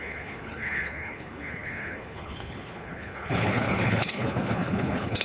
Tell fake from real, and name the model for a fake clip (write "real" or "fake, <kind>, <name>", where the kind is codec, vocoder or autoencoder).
fake, codec, HILCodec